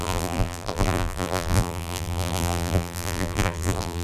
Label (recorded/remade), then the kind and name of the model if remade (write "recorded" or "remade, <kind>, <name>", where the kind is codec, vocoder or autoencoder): remade, vocoder, BigVGAN v2